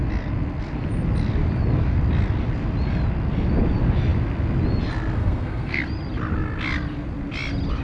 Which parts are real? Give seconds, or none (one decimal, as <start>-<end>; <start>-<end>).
0.0-5.2; 5.8-7.8